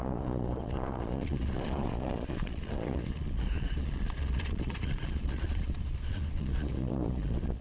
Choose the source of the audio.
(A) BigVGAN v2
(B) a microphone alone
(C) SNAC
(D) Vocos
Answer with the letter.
D